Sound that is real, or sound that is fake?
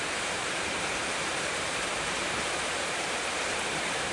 fake